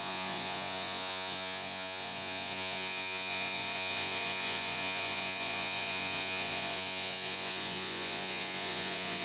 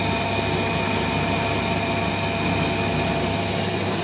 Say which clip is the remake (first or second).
first